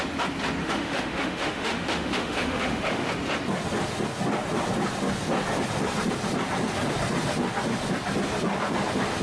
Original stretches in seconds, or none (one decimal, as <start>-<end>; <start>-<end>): 0.0-0.6; 3.1-9.2